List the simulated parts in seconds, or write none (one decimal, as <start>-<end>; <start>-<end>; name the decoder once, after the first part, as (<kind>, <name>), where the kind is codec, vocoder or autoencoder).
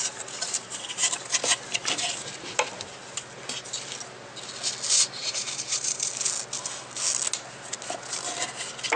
5.2-6.1 (vocoder, BigVGAN v2)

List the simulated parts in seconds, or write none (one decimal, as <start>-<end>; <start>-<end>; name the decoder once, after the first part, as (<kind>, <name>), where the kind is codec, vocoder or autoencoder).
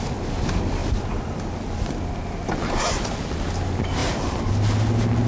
0.8-1.5 (vocoder, BigVGAN v2); 4.0-4.5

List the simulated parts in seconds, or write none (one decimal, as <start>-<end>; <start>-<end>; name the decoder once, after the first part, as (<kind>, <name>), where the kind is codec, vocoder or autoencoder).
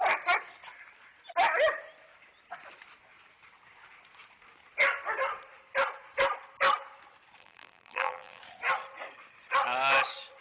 7.4-8.4 (vocoder, BigVGAN v2)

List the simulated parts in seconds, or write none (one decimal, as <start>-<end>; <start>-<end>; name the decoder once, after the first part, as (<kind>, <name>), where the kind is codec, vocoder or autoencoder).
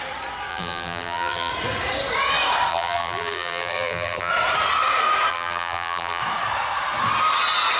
0.5-1.5 (vocoder, BigVGAN v2); 2.7-4.3; 5.3-6.2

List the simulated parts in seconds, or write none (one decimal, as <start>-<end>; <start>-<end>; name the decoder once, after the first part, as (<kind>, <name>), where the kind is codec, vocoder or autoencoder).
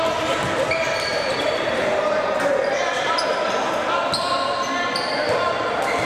1.1-3.5 (vocoder, BigVGAN v2)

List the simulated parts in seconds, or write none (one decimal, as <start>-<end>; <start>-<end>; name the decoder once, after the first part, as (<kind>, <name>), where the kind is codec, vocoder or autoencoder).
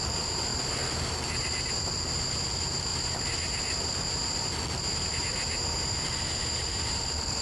0.0-7.4 (vocoder, BigVGAN v2)